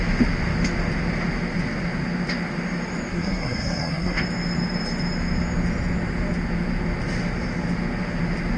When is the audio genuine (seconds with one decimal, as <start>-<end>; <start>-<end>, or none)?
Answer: 0.0-3.1; 4.2-8.6